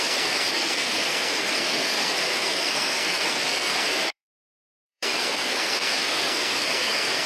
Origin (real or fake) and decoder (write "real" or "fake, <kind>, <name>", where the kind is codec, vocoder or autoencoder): fake, codec, SNAC